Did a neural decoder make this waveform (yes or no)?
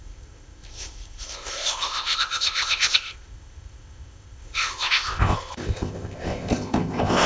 yes